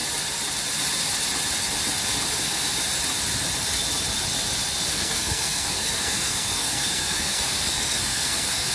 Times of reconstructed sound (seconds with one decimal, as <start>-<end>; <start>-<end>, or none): 4.9-8.7